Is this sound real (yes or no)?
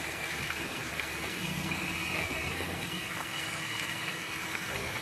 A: no